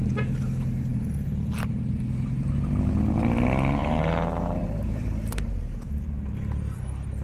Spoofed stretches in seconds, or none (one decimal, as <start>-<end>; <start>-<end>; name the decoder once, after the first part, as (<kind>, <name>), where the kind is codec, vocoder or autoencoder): 3.8-6.0 (vocoder, BigVGAN v2)